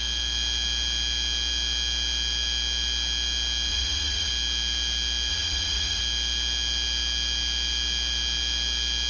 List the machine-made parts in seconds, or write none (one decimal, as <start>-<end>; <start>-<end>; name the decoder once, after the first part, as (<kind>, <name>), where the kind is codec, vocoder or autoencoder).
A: 3.7-4.3 (vocoder, Vocos); 5.3-6.0